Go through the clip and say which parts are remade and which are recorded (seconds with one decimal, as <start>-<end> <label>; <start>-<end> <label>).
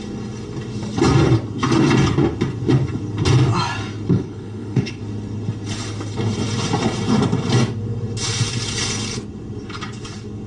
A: 0.0-4.1 recorded; 4.1-5.0 remade; 5.0-10.5 recorded